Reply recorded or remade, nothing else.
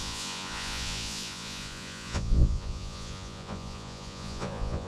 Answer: remade